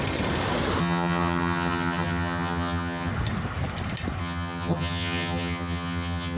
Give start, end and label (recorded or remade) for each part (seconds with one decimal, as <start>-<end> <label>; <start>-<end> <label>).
0.0-0.8 recorded; 0.8-3.1 remade; 3.1-4.2 recorded; 4.2-6.4 remade